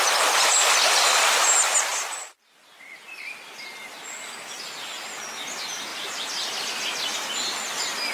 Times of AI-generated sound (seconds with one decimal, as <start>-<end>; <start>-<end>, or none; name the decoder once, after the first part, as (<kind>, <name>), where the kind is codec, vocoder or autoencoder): 5.9-6.5 (vocoder, BigVGAN v2)